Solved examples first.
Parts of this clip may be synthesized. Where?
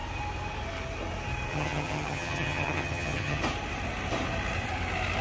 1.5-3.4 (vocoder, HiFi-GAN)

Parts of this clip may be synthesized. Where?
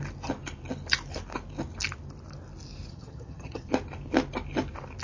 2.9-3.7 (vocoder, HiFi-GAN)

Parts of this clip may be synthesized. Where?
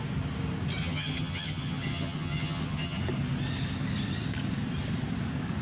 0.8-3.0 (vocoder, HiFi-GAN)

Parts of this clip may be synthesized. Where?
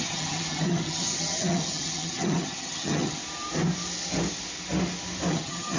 0.0-3.2 (vocoder, HiFi-GAN); 5.3-5.8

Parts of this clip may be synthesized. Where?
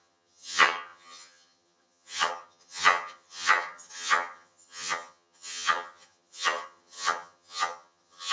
0.0-8.3 (vocoder, HiFi-GAN)